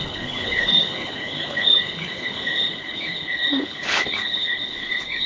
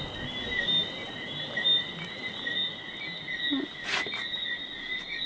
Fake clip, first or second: first